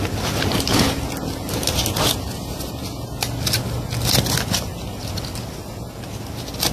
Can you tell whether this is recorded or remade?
recorded